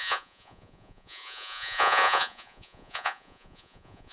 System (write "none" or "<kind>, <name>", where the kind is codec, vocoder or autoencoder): vocoder, Vocos